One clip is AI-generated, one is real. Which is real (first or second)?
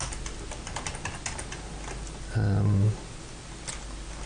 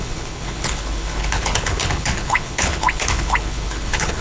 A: first